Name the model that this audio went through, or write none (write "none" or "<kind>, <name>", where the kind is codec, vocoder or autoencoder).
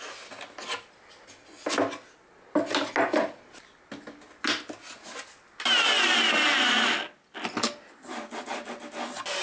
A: none